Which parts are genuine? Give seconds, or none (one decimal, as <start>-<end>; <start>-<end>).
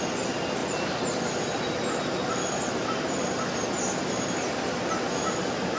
0.0-5.8